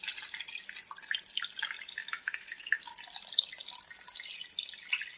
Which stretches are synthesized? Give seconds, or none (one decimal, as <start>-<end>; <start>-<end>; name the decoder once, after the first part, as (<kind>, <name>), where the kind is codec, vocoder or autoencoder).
2.0-2.8 (autoencoder, DAC-VAE)